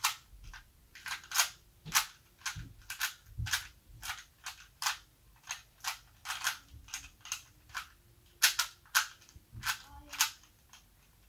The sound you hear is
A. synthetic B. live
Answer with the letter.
B